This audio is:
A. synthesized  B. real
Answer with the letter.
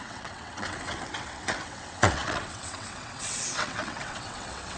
A